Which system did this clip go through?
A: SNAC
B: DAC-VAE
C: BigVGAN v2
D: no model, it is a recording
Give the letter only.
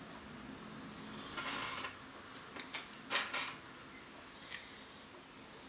D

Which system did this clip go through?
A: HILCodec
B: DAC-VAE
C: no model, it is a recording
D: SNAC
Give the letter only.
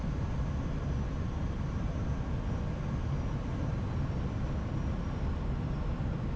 C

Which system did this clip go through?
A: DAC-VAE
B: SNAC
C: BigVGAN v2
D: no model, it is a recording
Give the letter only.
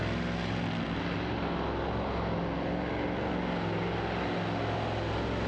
D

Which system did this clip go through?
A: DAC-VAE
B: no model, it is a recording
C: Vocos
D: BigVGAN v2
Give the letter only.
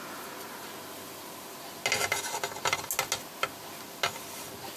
B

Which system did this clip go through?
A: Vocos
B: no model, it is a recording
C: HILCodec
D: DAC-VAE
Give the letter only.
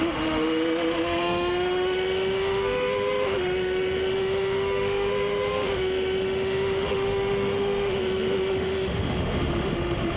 D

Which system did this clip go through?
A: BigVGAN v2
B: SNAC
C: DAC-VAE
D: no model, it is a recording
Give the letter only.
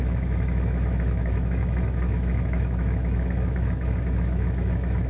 C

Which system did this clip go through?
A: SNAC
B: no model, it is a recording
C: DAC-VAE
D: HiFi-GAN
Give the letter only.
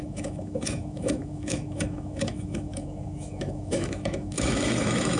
C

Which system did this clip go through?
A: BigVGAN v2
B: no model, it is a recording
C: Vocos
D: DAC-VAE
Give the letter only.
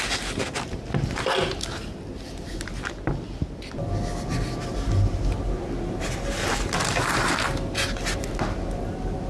B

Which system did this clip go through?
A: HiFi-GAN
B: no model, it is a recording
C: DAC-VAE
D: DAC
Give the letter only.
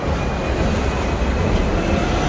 B